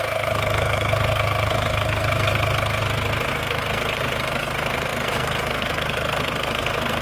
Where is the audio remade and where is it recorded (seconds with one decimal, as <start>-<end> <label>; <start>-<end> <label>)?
0.0-2.8 remade; 2.8-3.3 recorded; 3.3-7.0 remade